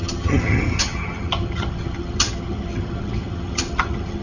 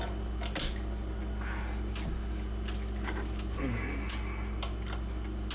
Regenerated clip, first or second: first